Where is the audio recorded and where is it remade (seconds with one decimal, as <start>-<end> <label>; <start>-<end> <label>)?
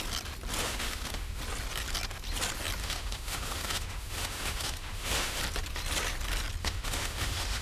0.0-0.6 recorded; 0.6-1.4 remade; 1.4-2.8 recorded; 2.8-5.4 remade; 5.4-6.6 recorded; 6.6-7.6 remade